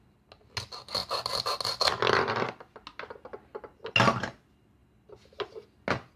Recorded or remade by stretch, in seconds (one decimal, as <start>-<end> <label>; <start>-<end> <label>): 0.0-6.2 recorded